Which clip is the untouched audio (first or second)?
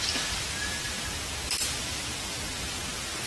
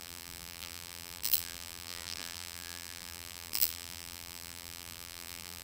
first